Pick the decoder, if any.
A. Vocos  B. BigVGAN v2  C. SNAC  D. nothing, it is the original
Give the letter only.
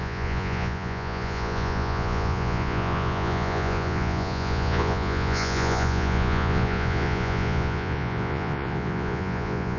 A